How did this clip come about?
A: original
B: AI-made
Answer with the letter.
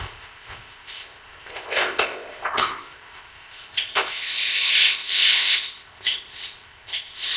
B